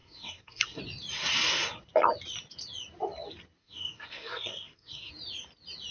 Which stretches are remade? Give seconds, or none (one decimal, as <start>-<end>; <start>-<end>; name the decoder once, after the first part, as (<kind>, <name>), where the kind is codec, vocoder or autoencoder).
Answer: 0.0-0.8 (codec, SNAC); 3.6-5.1